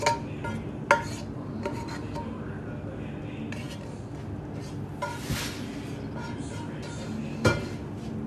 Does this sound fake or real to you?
real